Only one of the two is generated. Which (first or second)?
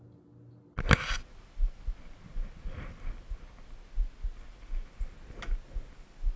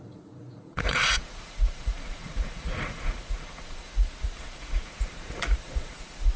second